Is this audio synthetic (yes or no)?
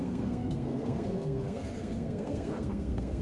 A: yes